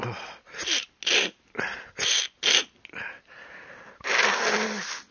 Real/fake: real